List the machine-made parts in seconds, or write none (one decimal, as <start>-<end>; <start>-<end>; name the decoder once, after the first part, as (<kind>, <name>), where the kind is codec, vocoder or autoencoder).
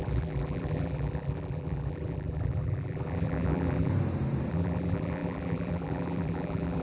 0.0-3.9 (vocoder, BigVGAN v2); 4.5-6.8